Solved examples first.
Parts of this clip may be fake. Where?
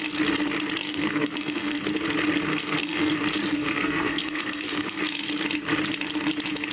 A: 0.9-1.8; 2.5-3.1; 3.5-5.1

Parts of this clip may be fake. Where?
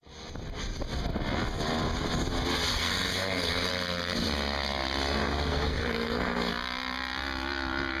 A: 2.7-3.7; 5.5-6.5